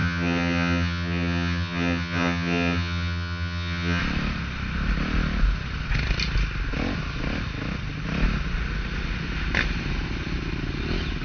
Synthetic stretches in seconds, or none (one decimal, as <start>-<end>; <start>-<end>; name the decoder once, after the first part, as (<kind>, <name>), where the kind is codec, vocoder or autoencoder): 0.0-4.0 (vocoder, HiFi-GAN)